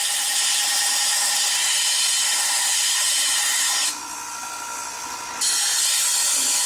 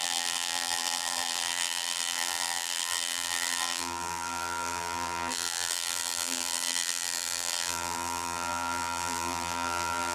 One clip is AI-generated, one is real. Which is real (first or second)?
first